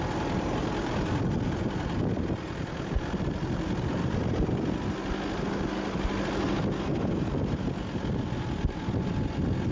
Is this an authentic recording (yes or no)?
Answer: yes